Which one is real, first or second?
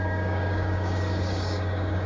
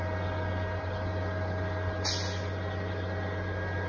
second